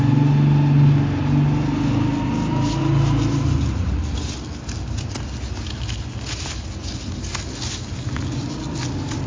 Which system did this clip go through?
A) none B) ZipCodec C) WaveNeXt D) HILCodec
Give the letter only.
A